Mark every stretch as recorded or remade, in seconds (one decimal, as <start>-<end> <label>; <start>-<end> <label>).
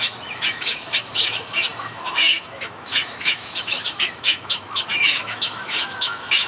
0.0-6.5 remade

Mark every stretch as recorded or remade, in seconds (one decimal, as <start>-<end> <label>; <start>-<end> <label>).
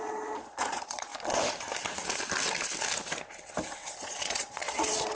0.0-1.1 remade; 1.1-4.0 recorded; 4.0-5.2 remade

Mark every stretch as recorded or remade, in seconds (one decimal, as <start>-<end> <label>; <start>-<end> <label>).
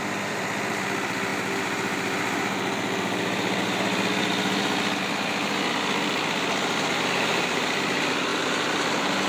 0.0-1.3 remade; 1.3-5.0 recorded; 5.0-9.3 remade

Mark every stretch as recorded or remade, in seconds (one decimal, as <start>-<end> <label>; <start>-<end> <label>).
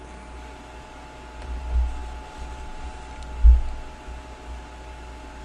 0.0-5.4 recorded